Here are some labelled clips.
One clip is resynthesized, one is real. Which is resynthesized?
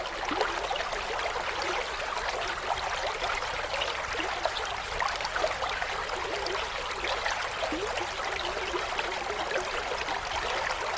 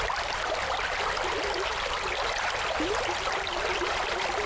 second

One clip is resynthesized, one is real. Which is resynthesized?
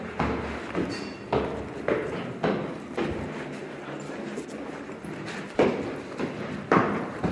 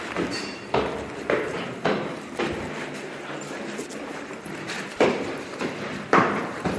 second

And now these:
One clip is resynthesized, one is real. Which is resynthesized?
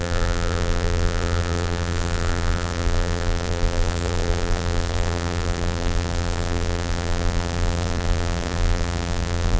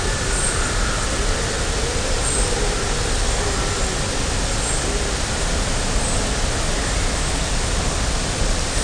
first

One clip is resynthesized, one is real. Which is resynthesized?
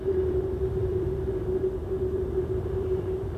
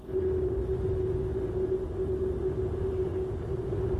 first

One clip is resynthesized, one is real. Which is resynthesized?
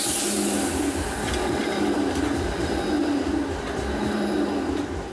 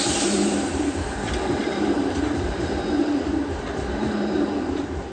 second